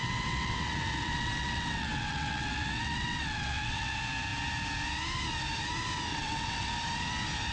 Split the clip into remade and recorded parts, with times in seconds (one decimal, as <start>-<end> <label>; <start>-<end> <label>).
0.0-3.9 remade; 3.9-6.1 recorded; 6.1-6.7 remade; 6.7-7.5 recorded